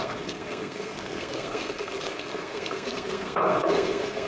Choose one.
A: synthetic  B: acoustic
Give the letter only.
A